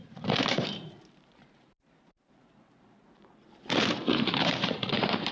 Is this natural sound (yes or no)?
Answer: no